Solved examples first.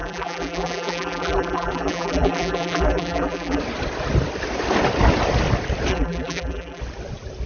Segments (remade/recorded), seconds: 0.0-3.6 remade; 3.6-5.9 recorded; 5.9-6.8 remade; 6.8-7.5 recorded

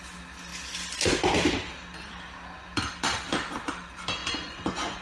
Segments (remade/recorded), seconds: 0.0-4.2 recorded; 4.2-5.0 remade

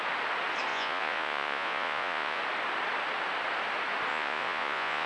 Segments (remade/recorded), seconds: 0.0-0.7 recorded; 0.7-2.4 remade; 2.4-4.1 recorded; 4.1-5.1 remade

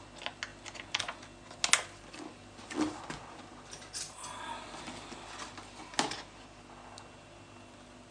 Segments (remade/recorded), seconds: 0.0-8.1 recorded

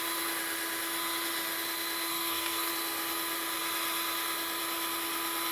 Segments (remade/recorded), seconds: 0.0-2.1 recorded; 2.1-2.7 remade; 2.7-5.5 recorded

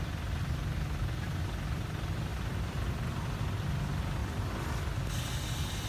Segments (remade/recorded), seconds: 0.0-2.3 recorded; 2.3-2.9 remade; 2.9-5.9 recorded

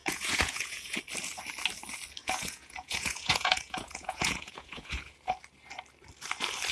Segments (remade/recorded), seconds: 0.0-1.0 remade; 1.0-2.2 recorded; 2.2-5.1 remade; 5.1-6.7 recorded

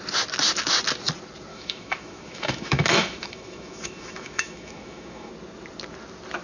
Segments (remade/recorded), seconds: 0.0-1.5 recorded; 1.5-5.3 remade; 5.3-6.4 recorded